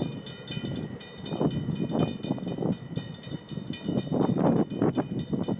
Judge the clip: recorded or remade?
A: remade